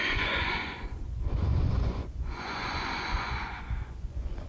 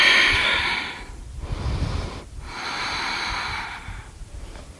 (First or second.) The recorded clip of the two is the second